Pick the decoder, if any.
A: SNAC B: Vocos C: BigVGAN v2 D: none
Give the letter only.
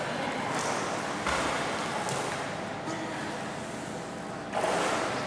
D